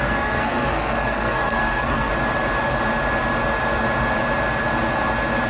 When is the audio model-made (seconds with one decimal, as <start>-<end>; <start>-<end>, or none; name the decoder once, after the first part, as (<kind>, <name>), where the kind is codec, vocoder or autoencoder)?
0.0-2.1 (codec, SNAC)